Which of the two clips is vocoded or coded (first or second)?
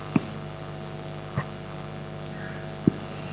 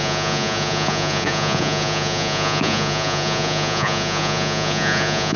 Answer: second